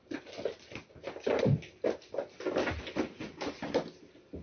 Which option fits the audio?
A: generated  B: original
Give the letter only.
B